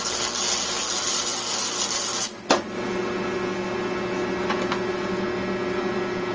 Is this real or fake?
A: real